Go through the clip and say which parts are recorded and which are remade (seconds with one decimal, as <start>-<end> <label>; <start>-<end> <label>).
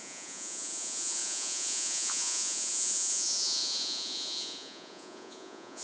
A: 0.0-5.8 remade